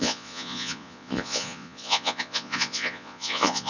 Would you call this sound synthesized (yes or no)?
yes